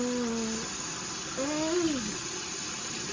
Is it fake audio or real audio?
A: real